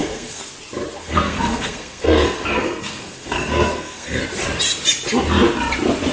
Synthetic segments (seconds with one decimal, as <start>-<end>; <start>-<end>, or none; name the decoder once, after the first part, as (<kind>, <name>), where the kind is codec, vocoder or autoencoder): 0.0-0.5 (codec, SNAC); 1.0-4.2